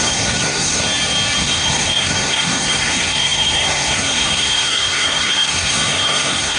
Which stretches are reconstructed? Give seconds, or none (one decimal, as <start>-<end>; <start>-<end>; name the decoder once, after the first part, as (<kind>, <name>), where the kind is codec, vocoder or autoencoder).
0.0-0.8 (codec, SNAC); 1.4-6.6